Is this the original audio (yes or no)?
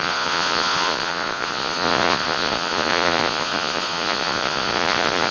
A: no